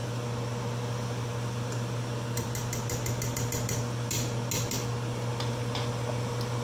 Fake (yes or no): no